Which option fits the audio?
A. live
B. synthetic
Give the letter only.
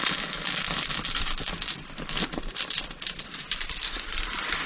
A